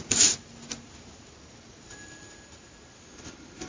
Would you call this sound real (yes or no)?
yes